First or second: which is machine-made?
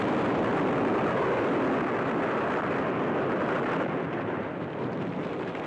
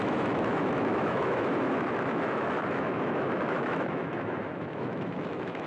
second